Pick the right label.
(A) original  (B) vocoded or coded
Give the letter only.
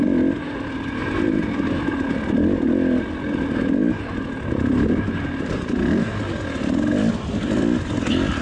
A